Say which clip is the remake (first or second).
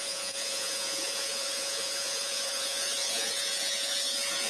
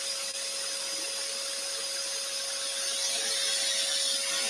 first